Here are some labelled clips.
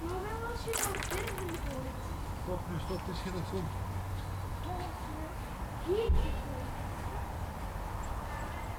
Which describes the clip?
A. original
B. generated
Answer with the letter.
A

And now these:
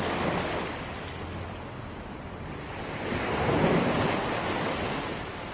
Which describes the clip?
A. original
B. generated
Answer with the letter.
A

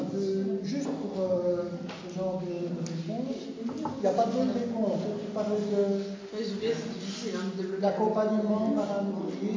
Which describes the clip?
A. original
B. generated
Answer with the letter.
A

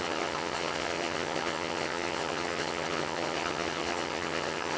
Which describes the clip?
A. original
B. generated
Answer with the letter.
B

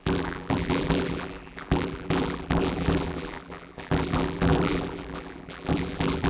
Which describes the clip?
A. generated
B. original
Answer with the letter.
A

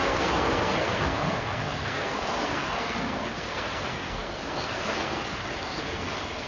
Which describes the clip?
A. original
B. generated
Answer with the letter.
B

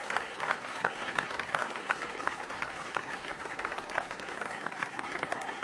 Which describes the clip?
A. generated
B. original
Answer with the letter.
A